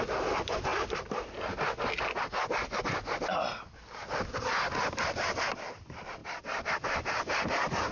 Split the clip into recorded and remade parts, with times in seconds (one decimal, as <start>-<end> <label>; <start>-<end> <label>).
0.0-7.9 recorded